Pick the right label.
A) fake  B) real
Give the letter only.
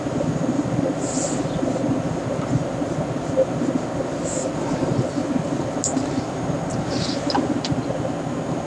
B